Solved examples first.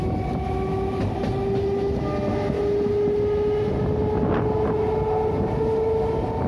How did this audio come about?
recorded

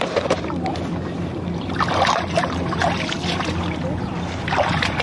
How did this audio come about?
remade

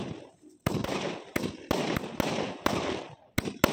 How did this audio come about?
recorded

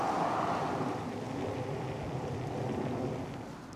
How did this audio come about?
recorded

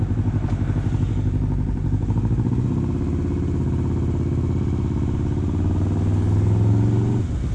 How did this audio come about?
recorded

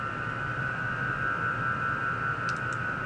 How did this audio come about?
recorded